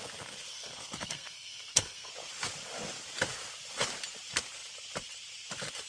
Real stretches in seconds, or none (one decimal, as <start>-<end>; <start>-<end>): 0.0-0.5; 2.1-5.9